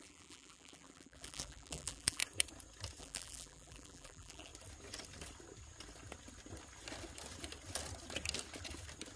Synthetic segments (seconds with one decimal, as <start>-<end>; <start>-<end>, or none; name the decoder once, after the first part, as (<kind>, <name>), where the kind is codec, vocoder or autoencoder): 0.0-2.2 (vocoder, BigVGAN v2); 3.0-4.5